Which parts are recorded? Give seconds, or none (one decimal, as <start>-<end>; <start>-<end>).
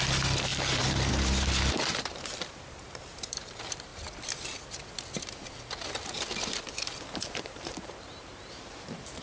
3.9-7.3